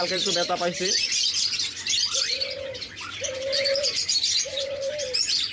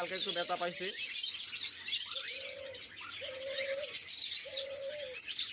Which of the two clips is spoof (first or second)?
first